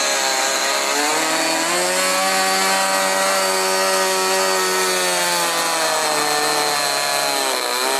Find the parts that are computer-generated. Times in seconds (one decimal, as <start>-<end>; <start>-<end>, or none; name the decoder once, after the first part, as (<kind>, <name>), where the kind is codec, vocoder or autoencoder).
none